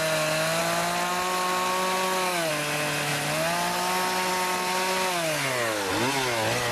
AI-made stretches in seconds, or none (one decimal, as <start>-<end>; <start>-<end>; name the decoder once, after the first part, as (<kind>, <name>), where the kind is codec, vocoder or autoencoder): none